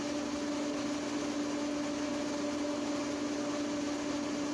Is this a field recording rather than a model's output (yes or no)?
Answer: yes